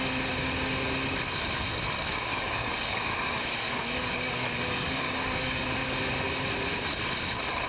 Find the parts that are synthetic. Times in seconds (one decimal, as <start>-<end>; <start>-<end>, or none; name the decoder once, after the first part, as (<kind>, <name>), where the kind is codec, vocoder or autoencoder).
2.3-5.6 (codec, DAC)